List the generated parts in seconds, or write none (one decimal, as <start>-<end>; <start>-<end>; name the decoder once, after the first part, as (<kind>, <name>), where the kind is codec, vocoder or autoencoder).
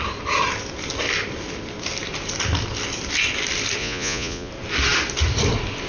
3.8-4.5 (vocoder, Vocos)